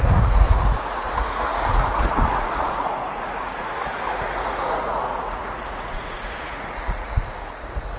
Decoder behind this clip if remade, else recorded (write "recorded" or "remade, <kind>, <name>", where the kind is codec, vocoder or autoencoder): remade, vocoder, Vocos